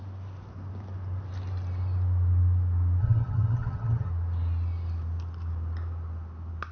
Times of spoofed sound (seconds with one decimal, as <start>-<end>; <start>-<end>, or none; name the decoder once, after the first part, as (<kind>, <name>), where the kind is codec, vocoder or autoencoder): 3.0-4.1 (vocoder, HiFi-GAN)